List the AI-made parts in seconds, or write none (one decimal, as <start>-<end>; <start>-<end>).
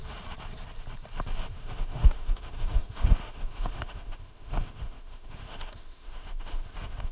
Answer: 1.5-7.1